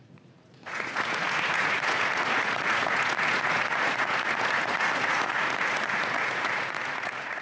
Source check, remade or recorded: remade